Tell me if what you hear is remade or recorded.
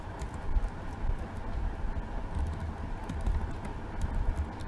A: recorded